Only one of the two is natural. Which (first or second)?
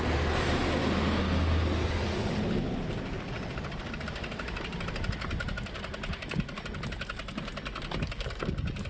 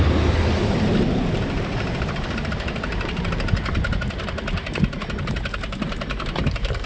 first